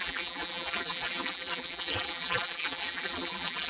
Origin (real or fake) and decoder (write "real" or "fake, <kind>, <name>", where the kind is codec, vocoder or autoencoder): fake, vocoder, BigVGAN v2